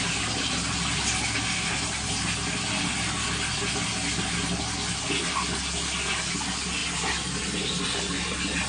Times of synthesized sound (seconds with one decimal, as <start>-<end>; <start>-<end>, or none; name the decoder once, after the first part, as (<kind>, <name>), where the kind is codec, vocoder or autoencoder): none